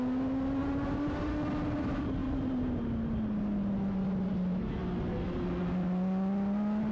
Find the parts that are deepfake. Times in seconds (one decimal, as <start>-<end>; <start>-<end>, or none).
0.6-1.3; 2.2-2.8